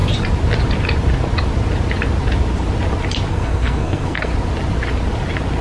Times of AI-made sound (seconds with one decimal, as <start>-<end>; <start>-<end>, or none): 3.3-4.3